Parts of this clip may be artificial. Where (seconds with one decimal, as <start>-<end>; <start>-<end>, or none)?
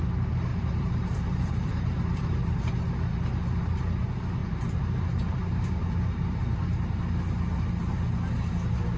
0.5-2.7; 4.4-6.4